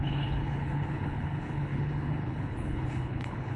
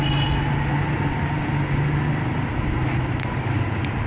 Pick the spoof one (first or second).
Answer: first